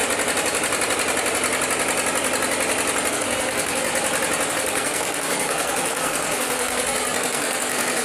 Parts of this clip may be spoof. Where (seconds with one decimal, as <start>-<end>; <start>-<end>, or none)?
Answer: 3.1-3.9; 4.5-8.0